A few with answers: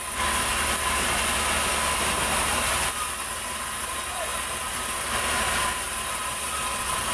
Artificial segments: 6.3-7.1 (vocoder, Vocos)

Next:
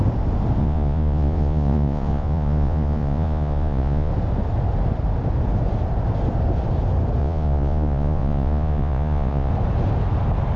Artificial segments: 0.6-4.1 (vocoder, Vocos); 7.2-9.5

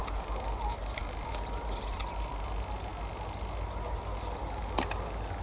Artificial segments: none

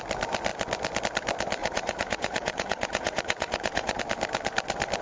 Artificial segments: 1.6-4.0 (vocoder, Vocos)

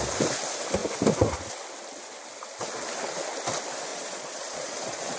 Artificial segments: 3.9-5.2 (vocoder, Vocos)